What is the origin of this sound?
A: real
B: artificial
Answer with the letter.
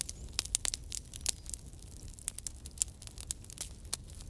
A